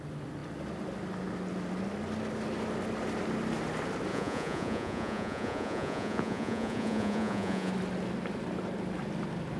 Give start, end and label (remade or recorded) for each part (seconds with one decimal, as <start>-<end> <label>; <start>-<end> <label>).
0.0-4.1 recorded; 4.1-7.7 remade; 7.7-9.6 recorded